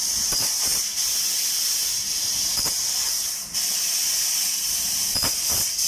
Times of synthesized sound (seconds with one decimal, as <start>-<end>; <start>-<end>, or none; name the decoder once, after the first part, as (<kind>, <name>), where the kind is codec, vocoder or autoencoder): none